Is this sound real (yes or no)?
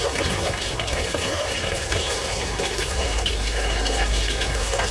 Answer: no